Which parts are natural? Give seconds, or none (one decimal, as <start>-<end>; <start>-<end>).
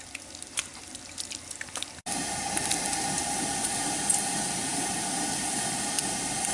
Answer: 0.0-6.5